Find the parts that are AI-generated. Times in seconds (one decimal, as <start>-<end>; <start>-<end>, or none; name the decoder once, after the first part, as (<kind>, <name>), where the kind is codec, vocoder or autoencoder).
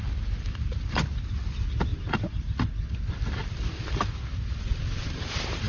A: none